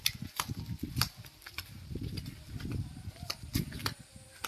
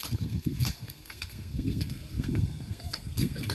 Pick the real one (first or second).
first